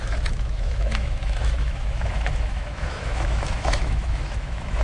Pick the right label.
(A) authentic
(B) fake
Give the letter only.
B